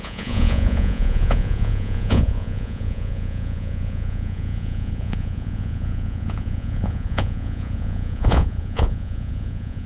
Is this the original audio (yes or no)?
no